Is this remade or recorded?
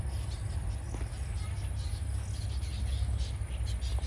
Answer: recorded